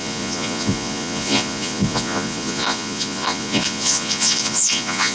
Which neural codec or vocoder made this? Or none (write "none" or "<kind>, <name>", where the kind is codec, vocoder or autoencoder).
vocoder, Vocos